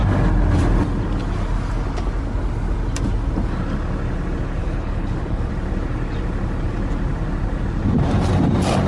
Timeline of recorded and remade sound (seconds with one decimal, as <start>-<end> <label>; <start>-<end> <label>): 0.0-4.6 recorded; 4.6-5.5 remade; 5.5-8.9 recorded